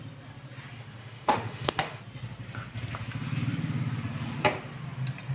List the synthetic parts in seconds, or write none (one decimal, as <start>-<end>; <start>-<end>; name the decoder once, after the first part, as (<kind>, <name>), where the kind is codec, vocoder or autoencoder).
1.0-2.0 (autoencoder, DAC-VAE)